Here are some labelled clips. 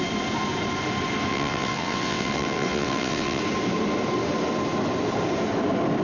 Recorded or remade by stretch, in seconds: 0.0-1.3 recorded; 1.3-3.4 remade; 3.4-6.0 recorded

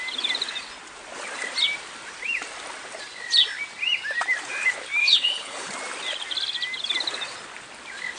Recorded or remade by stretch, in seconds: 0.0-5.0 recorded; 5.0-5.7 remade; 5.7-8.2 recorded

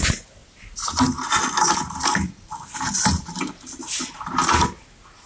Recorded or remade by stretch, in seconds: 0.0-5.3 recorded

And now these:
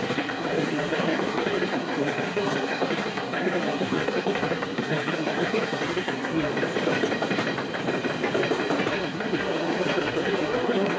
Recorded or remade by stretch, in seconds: 0.0-6.5 remade; 6.5-8.9 recorded; 8.9-11.0 remade

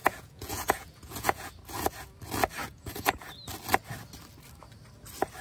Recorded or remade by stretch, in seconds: 0.0-1.5 remade; 1.5-2.6 recorded; 2.6-3.3 remade; 3.3-5.4 recorded

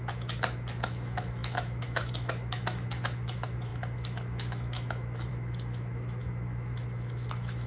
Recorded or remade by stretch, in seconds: 0.0-7.7 remade

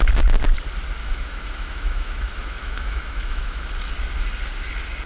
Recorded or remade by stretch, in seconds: 0.0-1.0 recorded; 1.0-3.7 remade; 3.7-5.1 recorded

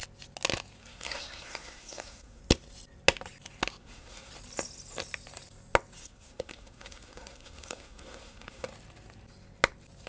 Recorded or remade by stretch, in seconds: 0.0-0.8 recorded; 0.8-2.4 remade; 2.4-3.8 recorded; 3.8-4.3 remade; 4.3-6.0 recorded; 6.0-8.7 remade; 8.7-10.1 recorded